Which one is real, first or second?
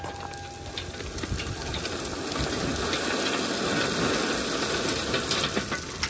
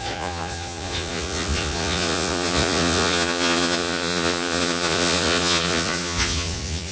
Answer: first